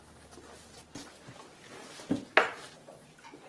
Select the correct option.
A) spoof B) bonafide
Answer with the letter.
B